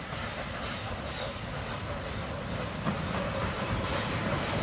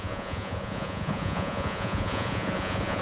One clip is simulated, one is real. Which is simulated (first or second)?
second